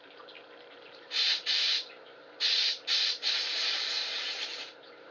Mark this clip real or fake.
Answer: fake